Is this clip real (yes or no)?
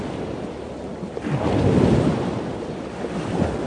yes